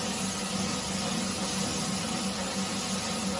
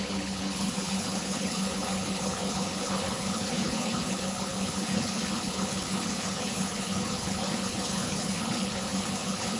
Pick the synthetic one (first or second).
second